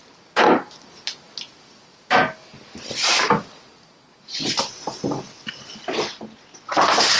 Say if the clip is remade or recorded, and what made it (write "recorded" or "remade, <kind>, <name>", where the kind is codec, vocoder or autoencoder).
recorded